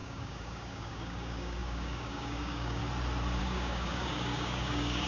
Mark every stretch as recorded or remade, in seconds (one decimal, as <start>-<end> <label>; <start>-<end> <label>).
0.0-2.8 remade; 2.8-3.4 recorded; 3.4-5.1 remade